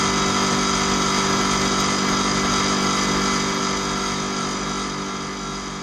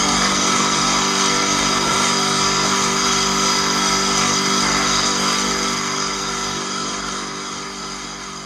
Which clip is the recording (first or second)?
first